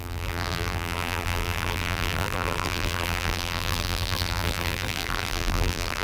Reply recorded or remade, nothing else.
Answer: remade